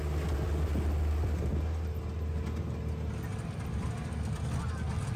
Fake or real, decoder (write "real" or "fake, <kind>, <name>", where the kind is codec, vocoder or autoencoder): real